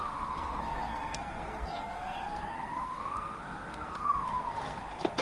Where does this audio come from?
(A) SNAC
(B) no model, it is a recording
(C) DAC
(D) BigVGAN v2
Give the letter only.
A